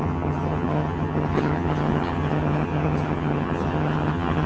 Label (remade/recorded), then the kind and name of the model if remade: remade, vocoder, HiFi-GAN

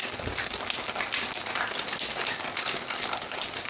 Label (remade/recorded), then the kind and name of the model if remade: recorded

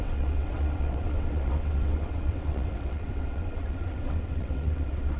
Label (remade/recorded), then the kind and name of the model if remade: remade, vocoder, WaveNeXt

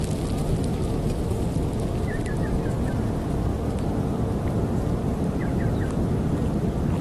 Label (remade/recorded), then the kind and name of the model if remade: recorded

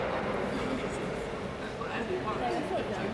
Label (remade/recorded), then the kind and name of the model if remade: recorded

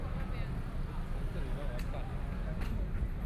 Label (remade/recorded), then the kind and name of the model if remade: recorded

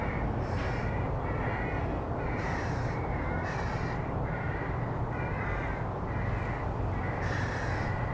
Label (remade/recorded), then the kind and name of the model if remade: recorded